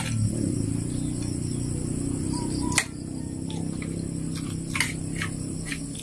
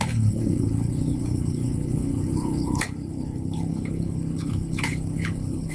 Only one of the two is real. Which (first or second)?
first